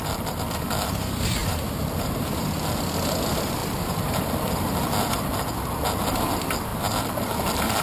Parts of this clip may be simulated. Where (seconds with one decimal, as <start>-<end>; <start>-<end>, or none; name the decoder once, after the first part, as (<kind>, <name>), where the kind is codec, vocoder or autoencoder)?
1.4-2.4 (vocoder, BigVGAN v2); 3.6-4.6